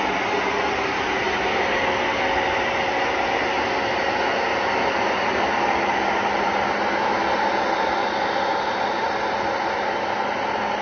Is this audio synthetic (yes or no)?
no